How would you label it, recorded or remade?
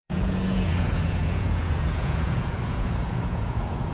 remade